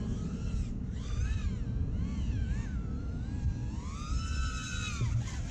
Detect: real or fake real